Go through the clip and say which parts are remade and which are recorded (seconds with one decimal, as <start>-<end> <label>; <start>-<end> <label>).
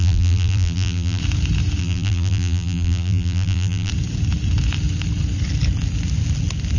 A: 0.0-1.2 remade; 1.2-1.8 recorded; 1.8-3.9 remade; 3.9-6.8 recorded